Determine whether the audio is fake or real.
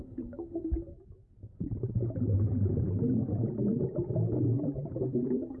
fake